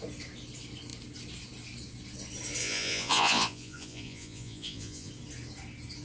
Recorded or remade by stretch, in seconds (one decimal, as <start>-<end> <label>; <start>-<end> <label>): 0.0-2.6 recorded; 2.6-5.1 remade; 5.1-6.0 recorded